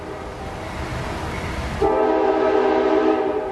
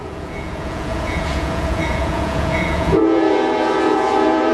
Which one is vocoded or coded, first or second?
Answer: second